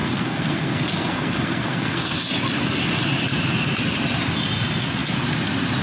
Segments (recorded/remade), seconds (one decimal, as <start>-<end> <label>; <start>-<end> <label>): 0.0-2.3 remade; 2.3-5.8 recorded